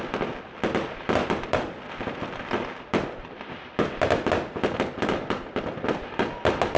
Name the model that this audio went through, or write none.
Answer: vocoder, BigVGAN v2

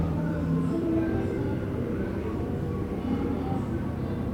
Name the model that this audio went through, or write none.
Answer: vocoder, BigVGAN v2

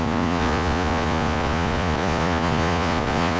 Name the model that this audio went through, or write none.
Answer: vocoder, Vocos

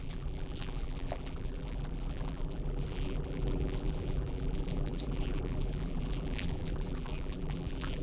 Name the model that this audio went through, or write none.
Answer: vocoder, BigVGAN v2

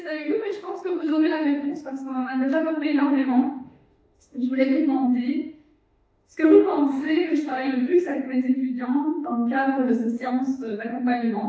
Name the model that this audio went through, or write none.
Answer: autoencoder, DAC-VAE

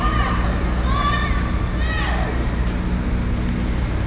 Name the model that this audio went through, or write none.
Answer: none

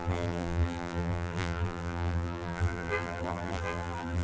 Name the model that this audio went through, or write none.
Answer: vocoder, BigVGAN v2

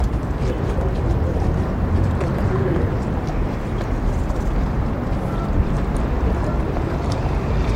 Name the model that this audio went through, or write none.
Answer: vocoder, BigVGAN v2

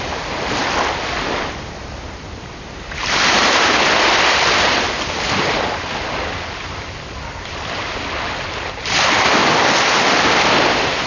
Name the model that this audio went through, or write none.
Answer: vocoder, BigVGAN v2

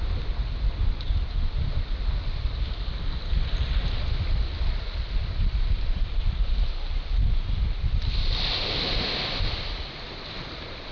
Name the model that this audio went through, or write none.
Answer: none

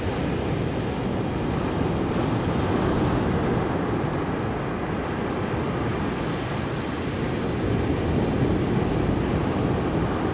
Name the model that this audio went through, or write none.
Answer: none